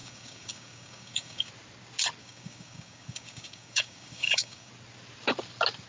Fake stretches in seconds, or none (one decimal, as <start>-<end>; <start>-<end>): 0.0-1.5; 2.2-4.7